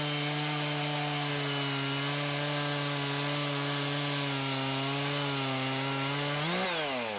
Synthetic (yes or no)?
no